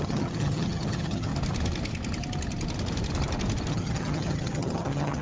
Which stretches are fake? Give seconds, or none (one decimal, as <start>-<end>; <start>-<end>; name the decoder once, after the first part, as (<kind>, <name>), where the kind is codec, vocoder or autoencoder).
0.0-1.3 (vocoder, HiFi-GAN); 3.7-5.2